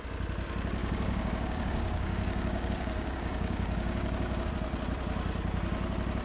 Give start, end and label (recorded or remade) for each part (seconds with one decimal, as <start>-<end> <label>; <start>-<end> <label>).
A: 0.0-0.8 recorded; 0.8-4.5 remade; 4.5-6.2 recorded

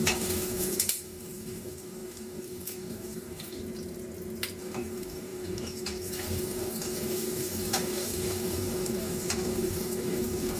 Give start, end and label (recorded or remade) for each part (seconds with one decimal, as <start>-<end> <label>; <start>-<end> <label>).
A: 0.0-3.6 remade; 3.6-4.6 recorded; 4.6-10.6 remade